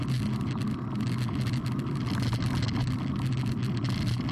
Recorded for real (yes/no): yes